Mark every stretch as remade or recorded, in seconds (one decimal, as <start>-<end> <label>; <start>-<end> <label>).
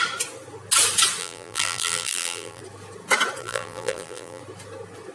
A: 0.0-1.2 recorded; 1.2-2.6 remade; 2.6-3.4 recorded; 3.4-4.4 remade; 4.4-5.1 recorded